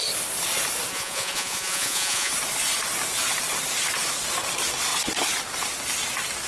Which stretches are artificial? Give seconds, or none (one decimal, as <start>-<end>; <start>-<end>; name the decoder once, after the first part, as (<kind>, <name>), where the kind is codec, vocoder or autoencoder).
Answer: 0.9-2.3 (vocoder, Vocos)